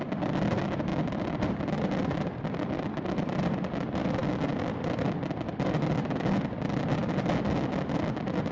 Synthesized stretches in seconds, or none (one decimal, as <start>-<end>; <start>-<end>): none